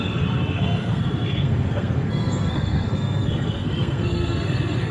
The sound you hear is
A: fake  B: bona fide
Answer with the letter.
A